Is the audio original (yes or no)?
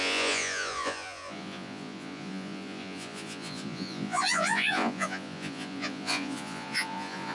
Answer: no